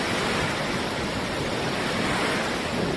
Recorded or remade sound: recorded